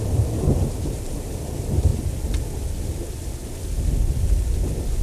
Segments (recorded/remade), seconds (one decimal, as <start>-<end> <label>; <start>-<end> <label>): 0.0-1.9 remade; 1.9-5.0 recorded